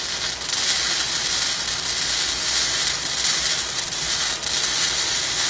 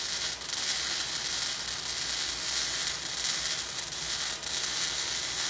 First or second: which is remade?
first